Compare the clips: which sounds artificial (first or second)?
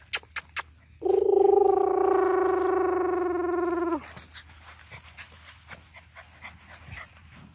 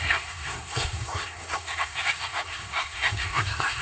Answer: second